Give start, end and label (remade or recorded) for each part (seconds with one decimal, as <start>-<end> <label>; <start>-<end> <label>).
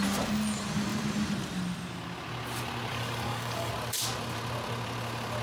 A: 0.0-2.9 recorded; 2.9-3.7 remade; 3.7-5.4 recorded